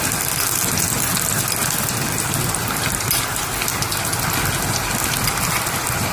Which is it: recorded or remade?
recorded